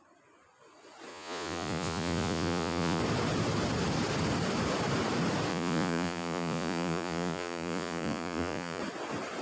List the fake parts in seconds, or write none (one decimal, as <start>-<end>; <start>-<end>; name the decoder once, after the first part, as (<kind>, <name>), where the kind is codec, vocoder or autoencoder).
1.1-3.0 (vocoder, Vocos); 5.5-8.8